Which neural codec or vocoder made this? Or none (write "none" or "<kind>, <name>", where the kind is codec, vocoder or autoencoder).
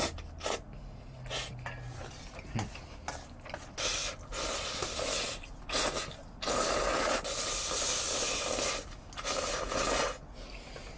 none